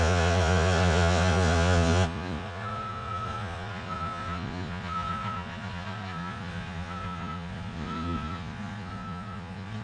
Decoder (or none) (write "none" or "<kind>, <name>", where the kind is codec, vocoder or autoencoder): vocoder, Vocos